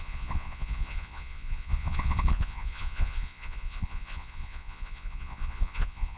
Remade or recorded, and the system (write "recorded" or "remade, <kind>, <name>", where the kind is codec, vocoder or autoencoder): remade, vocoder, Vocos